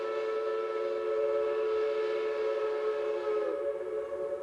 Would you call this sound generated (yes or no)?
no